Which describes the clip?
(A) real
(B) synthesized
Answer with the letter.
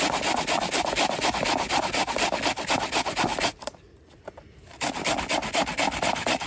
A